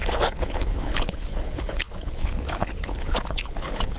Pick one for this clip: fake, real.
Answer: fake